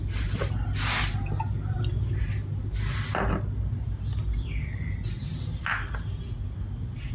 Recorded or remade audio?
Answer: recorded